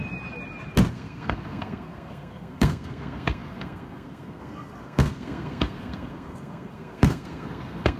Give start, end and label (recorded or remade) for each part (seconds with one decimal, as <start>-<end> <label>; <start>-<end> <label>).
0.0-0.9 recorded; 0.9-8.0 remade